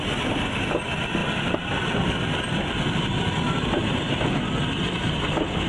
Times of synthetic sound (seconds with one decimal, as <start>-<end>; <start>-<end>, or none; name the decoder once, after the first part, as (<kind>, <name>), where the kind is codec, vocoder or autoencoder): none